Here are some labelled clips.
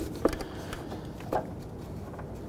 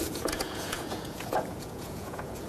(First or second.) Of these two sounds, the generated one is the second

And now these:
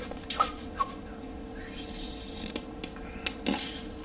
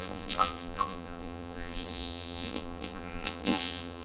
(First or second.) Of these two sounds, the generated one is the second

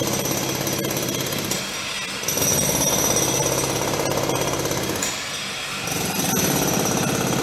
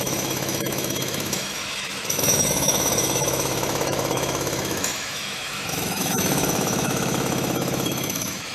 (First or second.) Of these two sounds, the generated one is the second